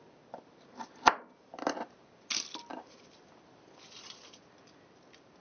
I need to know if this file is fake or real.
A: real